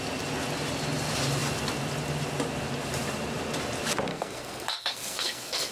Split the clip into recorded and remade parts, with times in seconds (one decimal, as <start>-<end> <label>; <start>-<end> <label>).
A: 0.0-4.1 recorded; 4.1-5.7 remade